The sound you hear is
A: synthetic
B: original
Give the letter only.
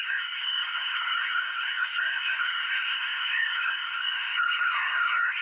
A